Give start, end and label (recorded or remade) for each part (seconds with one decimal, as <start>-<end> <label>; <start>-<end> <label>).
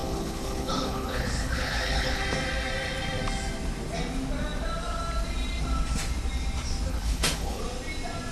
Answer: 0.0-2.2 remade; 2.2-6.9 recorded; 6.9-7.6 remade; 7.6-8.3 recorded